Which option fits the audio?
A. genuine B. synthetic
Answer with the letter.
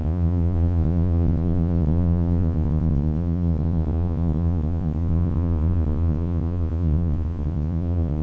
B